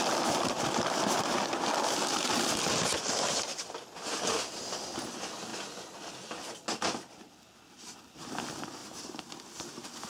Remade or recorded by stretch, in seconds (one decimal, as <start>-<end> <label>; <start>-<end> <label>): 0.0-3.0 recorded; 3.0-3.6 remade; 3.6-8.8 recorded; 8.8-9.3 remade; 9.3-10.1 recorded